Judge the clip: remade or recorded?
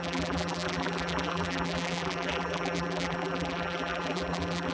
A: remade